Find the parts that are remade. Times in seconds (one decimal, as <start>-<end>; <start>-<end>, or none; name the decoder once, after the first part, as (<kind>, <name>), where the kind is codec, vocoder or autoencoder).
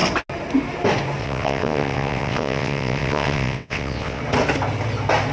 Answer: 1.2-4.2 (vocoder, WaveNeXt)